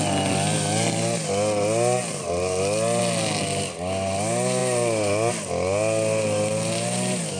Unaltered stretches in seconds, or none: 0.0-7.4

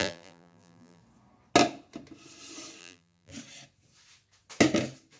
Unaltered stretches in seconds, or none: 1.0-2.8; 3.3-5.2

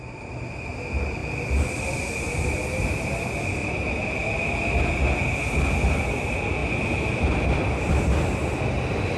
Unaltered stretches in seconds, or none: 0.0-1.2; 2.0-3.6; 4.9-6.6; 7.9-9.2

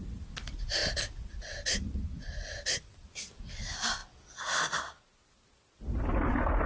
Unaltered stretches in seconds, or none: 0.0-6.7

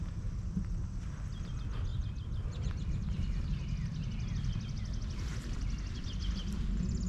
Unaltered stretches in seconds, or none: 0.0-1.9; 3.4-7.1

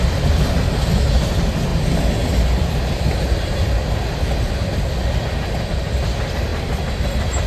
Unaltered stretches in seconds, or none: 0.0-7.5